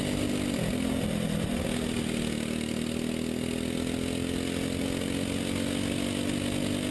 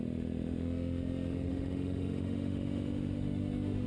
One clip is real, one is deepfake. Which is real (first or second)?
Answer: first